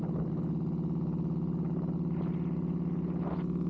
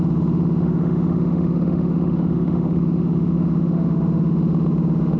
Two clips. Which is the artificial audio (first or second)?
second